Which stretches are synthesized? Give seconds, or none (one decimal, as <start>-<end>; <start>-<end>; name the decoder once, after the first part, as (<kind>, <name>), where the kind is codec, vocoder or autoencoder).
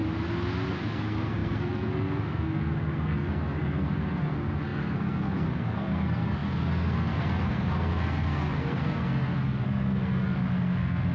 0.7-11.1 (codec, SNAC)